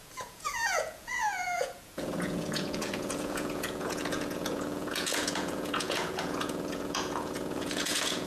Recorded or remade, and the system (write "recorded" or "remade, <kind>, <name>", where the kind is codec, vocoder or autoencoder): remade, vocoder, Vocos